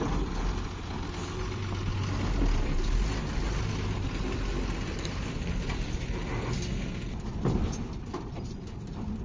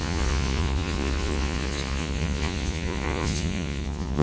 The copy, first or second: second